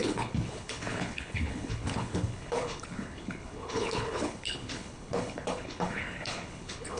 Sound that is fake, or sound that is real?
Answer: fake